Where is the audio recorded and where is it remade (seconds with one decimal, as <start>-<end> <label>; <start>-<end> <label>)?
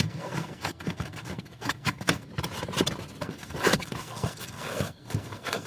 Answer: 0.0-2.3 remade; 2.3-3.2 recorded; 3.2-5.7 remade